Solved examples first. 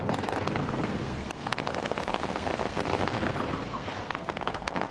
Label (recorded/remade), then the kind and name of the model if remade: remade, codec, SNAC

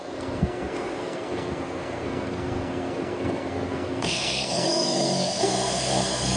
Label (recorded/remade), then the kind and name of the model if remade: remade, codec, SNAC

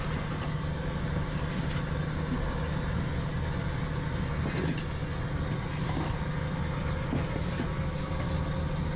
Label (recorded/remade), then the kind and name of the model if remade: recorded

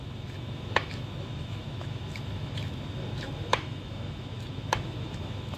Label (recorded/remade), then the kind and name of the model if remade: remade, autoencoder, DAC-VAE